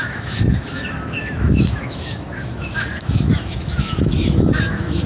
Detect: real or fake fake